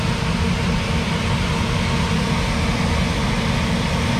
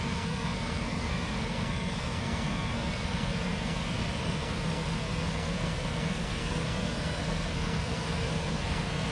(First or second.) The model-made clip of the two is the second